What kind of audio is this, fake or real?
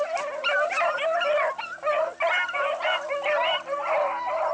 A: real